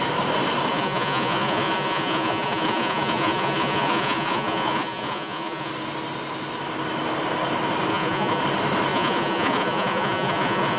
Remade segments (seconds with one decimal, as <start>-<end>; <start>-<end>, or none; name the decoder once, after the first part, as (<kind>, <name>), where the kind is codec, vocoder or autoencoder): 0.7-5.7 (vocoder, Vocos); 7.9-8.4; 8.9-10.8